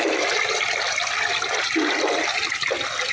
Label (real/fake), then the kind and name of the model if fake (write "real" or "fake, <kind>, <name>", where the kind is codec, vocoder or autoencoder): real